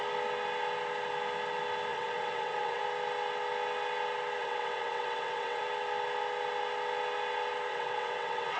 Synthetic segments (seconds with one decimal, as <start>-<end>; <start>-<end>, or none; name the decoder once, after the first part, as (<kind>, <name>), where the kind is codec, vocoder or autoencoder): 1.9-2.8 (vocoder, WaveNeXt); 4.4-5.6; 7.7-8.6